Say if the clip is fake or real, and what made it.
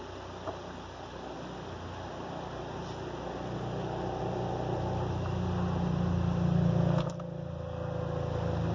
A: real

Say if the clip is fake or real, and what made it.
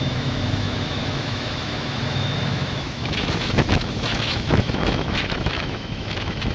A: fake, autoencoder, DAC-VAE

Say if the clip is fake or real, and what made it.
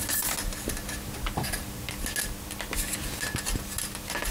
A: real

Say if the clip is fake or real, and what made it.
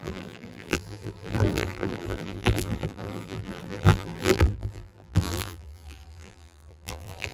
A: fake, vocoder, BigVGAN v2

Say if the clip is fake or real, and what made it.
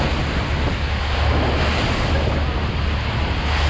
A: real